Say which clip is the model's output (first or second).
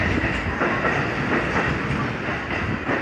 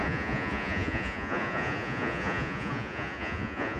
second